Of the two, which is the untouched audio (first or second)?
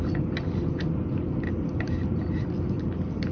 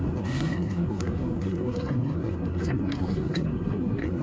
first